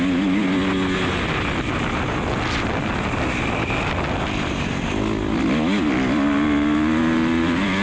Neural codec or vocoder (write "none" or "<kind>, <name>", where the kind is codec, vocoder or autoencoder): none